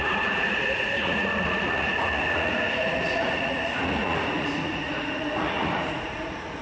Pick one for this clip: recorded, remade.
remade